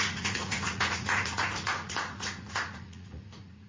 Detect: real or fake fake